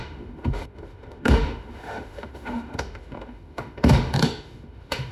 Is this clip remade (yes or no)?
yes